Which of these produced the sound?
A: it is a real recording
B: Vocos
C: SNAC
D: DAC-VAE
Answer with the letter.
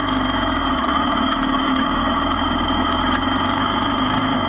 D